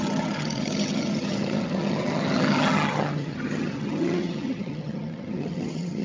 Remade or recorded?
remade